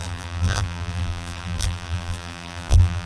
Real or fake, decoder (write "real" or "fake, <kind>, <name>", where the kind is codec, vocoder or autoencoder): fake, vocoder, BigVGAN v2